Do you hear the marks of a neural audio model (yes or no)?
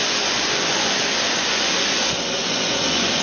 yes